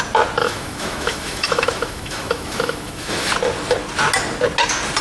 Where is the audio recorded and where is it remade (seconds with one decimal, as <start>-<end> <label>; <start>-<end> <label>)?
0.0-0.4 recorded; 0.4-3.3 remade; 3.3-5.0 recorded